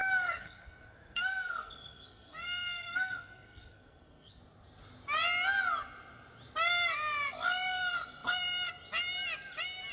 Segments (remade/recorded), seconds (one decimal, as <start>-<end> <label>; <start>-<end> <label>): 0.0-4.4 remade; 4.4-9.9 recorded